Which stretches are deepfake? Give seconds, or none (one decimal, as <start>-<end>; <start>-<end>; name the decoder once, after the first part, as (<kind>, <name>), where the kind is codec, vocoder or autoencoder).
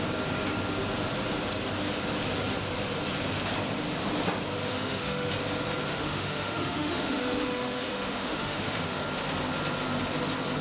4.7-5.3 (autoencoder, DAC-VAE); 5.9-9.0